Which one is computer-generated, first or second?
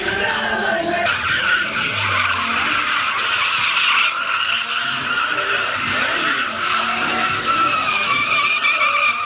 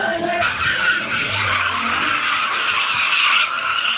second